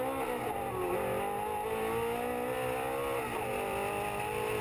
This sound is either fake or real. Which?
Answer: real